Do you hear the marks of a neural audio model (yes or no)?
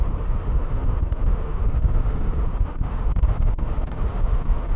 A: yes